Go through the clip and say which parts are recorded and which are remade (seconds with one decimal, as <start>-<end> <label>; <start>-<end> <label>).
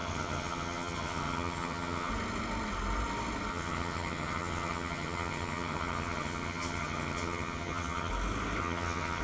0.0-2.1 remade; 2.1-3.5 recorded; 3.5-8.1 remade; 8.1-8.6 recorded; 8.6-9.2 remade